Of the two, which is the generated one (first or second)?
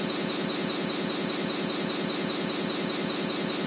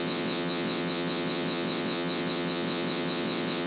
second